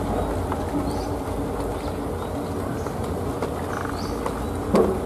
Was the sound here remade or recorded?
recorded